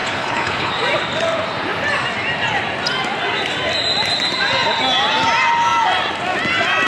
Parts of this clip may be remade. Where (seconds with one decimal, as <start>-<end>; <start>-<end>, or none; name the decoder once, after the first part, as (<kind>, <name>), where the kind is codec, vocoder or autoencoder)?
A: 0.0-0.7 (codec, HILCodec)